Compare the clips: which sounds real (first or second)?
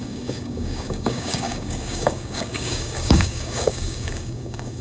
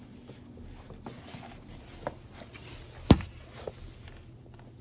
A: second